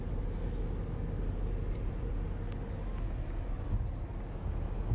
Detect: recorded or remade recorded